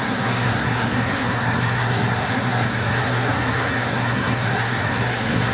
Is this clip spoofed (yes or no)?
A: yes